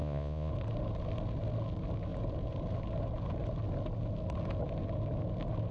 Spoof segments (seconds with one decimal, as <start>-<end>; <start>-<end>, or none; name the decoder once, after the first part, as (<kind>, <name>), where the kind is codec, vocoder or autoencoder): 0.0-0.5 (vocoder, Vocos)